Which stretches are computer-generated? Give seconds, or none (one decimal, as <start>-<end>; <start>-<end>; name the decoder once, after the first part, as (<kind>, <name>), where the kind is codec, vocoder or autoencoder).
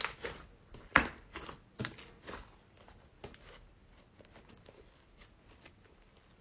none